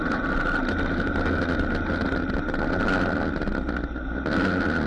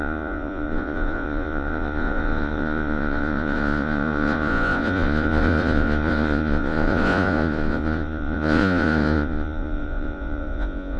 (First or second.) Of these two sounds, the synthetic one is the second